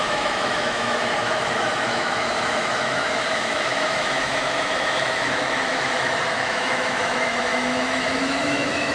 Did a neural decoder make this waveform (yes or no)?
yes